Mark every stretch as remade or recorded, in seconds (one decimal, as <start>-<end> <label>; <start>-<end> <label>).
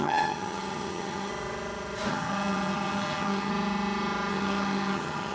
0.0-1.3 remade; 1.3-2.1 recorded; 2.1-3.5 remade; 3.5-4.3 recorded; 4.3-5.3 remade